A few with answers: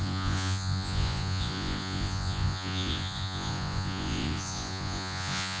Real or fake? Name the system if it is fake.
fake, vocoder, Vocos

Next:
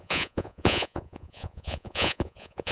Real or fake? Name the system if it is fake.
fake, vocoder, Vocos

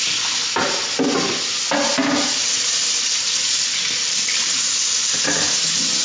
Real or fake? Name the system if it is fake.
real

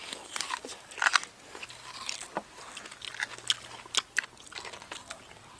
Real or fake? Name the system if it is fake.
real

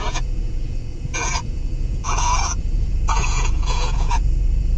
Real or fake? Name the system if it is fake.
fake, vocoder, Vocos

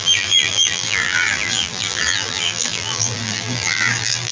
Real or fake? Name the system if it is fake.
fake, vocoder, BigVGAN v2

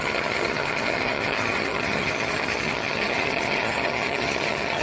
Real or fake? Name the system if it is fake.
fake, vocoder, HiFi-GAN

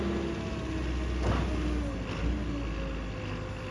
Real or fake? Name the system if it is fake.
real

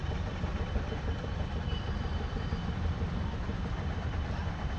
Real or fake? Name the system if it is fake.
fake, vocoder, BigVGAN v2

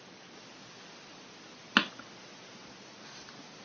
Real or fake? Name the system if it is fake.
real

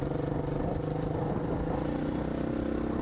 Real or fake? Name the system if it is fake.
real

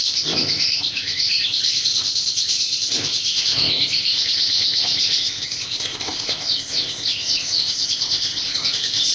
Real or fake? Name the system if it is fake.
fake, codec, ZipCodec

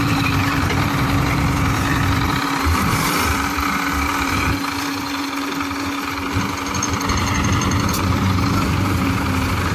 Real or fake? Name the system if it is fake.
fake, vocoder, BigVGAN v2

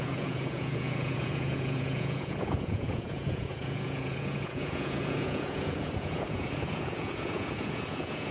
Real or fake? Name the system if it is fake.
fake, vocoder, Vocos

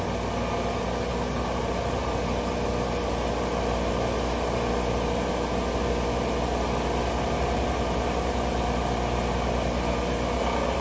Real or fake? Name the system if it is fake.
real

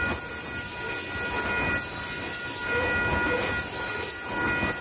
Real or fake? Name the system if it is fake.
real